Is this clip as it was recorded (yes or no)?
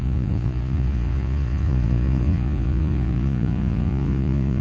no